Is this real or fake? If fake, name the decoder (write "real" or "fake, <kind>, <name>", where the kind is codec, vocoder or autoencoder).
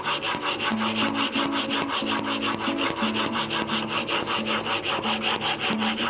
real